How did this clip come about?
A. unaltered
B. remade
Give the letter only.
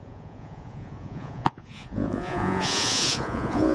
B